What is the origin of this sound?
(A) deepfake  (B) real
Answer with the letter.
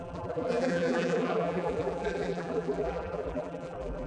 A